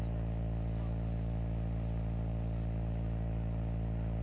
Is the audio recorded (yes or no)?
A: yes